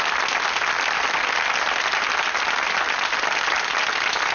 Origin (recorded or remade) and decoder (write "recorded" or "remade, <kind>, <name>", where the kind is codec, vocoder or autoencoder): recorded